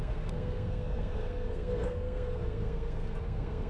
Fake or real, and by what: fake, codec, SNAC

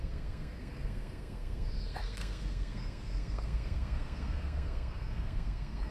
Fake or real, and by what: fake, codec, SNAC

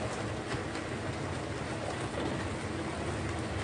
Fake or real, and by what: real